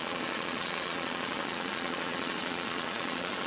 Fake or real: fake